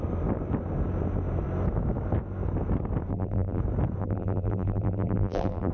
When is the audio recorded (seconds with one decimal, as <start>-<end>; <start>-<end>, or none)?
0.0-3.1; 3.6-4.0

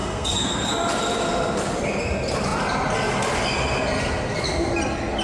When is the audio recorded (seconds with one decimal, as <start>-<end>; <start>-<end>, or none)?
0.7-5.2

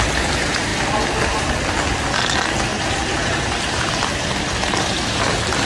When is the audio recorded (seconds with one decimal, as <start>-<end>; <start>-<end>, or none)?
0.0-2.7; 3.9-5.7

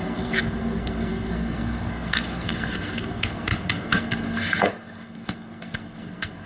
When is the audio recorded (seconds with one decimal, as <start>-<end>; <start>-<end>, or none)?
none

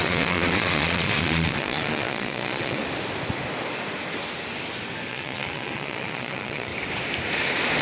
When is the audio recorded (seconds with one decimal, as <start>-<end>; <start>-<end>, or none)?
2.8-5.1; 6.7-7.8